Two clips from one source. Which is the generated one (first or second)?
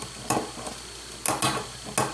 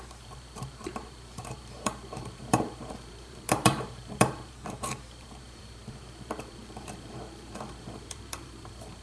second